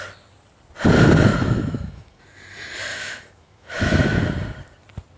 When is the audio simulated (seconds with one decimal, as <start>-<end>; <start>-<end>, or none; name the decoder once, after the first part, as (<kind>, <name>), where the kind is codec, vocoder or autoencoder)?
1.3-2.2 (autoencoder, DAC-VAE); 2.9-4.2